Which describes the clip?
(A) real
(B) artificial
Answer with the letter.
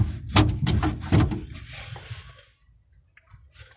A